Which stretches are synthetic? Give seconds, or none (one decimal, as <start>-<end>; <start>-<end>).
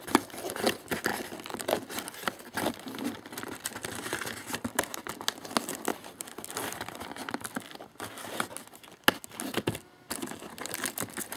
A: 1.1-5.1; 5.9-8.0